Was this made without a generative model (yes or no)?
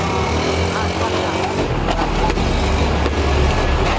yes